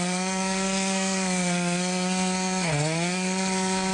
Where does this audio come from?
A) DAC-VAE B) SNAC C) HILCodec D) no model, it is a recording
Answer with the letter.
B